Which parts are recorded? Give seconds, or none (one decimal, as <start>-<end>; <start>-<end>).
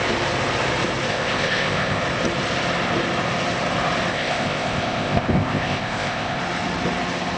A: 0.0-1.1; 2.0-4.1; 6.4-7.4